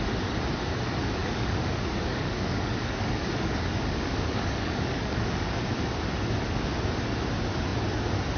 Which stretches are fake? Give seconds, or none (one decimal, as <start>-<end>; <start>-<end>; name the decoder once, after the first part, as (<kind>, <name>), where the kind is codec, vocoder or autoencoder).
1.2-5.6 (codec, DAC)